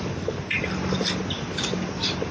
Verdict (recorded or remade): recorded